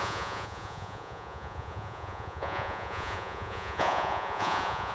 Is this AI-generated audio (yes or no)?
yes